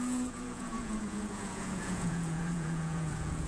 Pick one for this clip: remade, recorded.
remade